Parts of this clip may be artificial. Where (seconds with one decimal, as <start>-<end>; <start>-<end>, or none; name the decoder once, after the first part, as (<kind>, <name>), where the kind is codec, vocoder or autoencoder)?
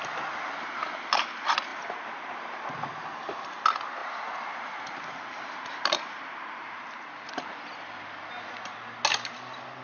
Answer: 4.0-8.1 (vocoder, BigVGAN v2)